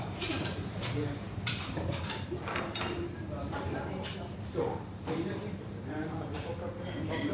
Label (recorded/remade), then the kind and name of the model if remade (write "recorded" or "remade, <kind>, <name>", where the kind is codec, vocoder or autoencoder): remade, vocoder, BigVGAN v2